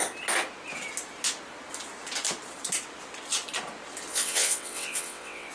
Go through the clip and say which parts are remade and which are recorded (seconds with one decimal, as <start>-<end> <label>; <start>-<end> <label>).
0.0-4.1 recorded; 4.1-5.5 remade

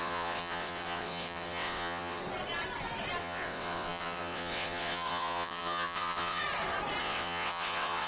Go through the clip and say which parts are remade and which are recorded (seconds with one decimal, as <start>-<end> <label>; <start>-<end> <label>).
0.0-2.2 remade; 2.2-3.2 recorded; 3.2-6.4 remade; 6.4-7.0 recorded; 7.0-8.1 remade

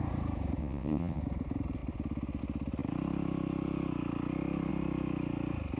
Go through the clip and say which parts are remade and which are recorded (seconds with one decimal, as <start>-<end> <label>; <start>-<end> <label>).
0.0-0.6 recorded; 0.6-1.2 remade; 1.2-5.8 recorded

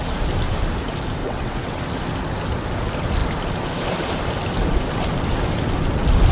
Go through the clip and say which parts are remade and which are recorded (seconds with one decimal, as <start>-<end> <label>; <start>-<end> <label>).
0.0-1.2 recorded; 1.2-1.8 remade; 1.8-6.3 recorded

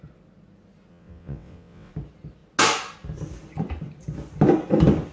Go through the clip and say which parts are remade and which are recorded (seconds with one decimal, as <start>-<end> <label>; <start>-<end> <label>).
0.0-0.9 recorded; 0.9-1.9 remade; 1.9-5.1 recorded